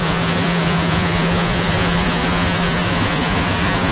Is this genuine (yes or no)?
no